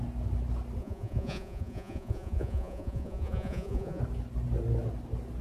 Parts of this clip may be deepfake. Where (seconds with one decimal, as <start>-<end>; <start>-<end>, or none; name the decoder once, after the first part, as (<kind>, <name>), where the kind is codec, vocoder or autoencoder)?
0.8-4.0 (vocoder, Vocos)